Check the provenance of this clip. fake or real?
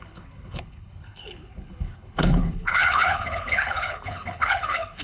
fake